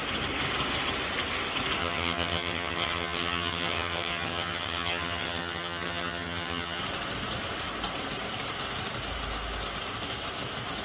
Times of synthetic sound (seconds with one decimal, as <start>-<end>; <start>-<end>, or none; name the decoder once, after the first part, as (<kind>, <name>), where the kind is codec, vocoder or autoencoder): 1.8-6.8 (vocoder, HiFi-GAN)